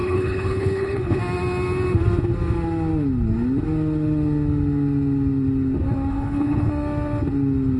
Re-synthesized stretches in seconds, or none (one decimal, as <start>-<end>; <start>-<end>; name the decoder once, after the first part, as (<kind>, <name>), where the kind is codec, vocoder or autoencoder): 0.0-1.2 (codec, HILCodec); 6.1-6.7